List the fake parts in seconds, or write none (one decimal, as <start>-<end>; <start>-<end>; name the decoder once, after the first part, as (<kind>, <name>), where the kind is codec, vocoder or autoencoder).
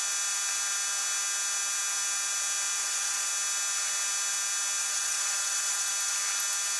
2.8-3.3 (vocoder, Vocos); 4.8-5.9